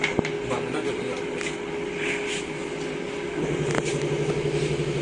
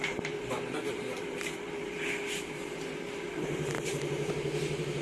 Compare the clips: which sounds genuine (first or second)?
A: first